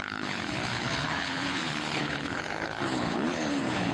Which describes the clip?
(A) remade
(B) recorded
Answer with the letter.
A